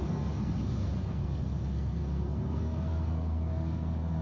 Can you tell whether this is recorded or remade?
remade